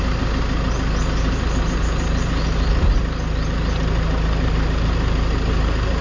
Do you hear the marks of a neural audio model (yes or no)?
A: no